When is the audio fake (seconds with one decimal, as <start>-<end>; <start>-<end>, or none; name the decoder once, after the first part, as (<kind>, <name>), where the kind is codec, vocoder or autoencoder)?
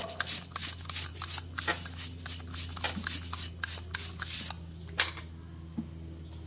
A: none